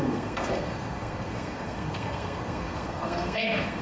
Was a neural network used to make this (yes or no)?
yes